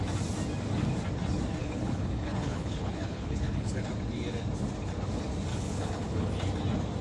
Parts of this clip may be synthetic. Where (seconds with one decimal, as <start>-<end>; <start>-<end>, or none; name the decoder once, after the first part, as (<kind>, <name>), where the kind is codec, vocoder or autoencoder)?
1.6-3.9 (codec, HILCodec); 5.5-6.3